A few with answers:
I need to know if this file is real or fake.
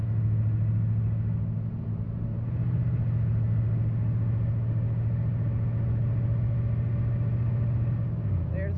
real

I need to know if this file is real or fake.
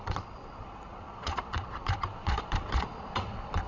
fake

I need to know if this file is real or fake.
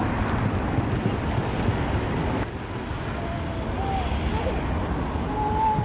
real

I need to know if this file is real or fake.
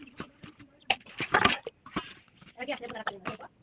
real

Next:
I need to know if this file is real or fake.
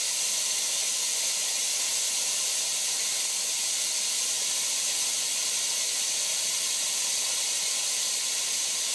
fake